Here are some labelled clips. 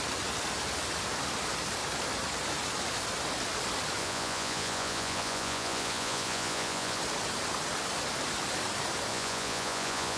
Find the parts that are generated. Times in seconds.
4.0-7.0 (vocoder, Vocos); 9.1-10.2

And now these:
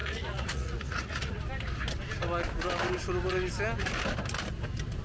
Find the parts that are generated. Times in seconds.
0.0-1.4 (vocoder, Vocos)

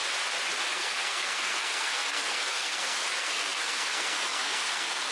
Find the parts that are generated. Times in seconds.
0.7-5.1 (codec, SNAC)

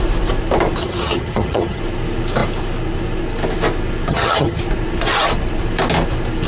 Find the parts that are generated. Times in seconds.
0.8-1.8 (vocoder, HiFi-GAN); 4.1-4.6

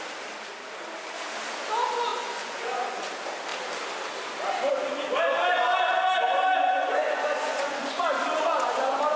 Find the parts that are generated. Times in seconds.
2.1-3.1 (vocoder, Vocos); 6.4-8.0